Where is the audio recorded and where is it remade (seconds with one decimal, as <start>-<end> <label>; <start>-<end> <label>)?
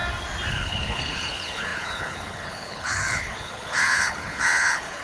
0.0-0.5 recorded; 0.5-5.0 remade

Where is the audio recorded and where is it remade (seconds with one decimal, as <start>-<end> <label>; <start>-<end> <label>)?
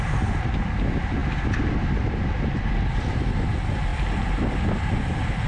0.0-5.5 recorded